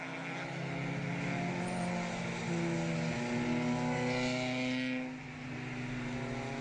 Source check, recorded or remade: recorded